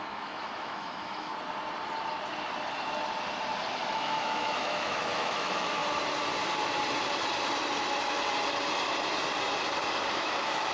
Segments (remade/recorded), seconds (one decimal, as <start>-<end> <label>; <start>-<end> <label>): 0.0-1.3 remade; 1.3-3.9 recorded; 3.9-5.8 remade; 5.8-10.1 recorded; 10.1-10.7 remade